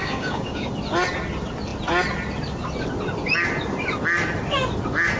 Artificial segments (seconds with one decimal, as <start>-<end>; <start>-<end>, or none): 0.0-0.7